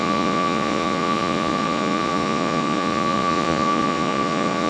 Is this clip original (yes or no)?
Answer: no